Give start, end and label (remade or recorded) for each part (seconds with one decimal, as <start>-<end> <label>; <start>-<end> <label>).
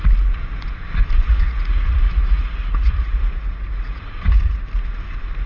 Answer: 0.0-1.3 recorded; 1.3-4.6 remade; 4.6-5.5 recorded